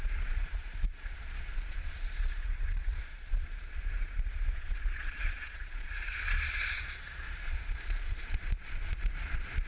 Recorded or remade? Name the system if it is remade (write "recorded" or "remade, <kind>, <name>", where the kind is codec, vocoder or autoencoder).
remade, vocoder, Vocos